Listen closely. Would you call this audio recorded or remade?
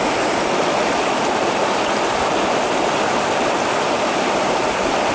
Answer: recorded